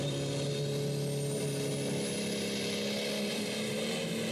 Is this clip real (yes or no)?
yes